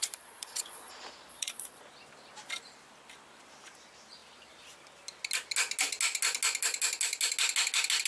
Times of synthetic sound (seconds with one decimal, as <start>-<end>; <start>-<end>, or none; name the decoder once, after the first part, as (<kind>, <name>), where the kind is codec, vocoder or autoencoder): 0.0-0.9 (vocoder, Vocos); 1.3-1.8